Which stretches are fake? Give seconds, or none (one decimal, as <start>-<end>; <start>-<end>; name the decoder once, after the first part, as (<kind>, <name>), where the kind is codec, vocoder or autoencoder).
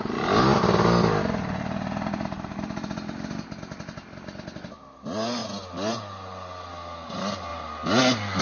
none